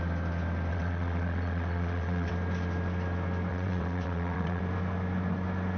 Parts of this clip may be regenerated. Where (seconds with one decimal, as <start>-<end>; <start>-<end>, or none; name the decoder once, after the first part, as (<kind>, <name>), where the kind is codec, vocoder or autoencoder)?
0.7-2.3 (vocoder, WaveNeXt); 3.5-4.6